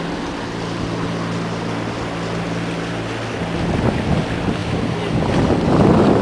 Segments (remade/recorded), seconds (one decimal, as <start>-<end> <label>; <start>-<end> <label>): 0.0-6.2 recorded